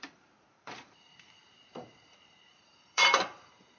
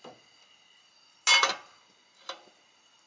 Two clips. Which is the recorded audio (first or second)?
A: second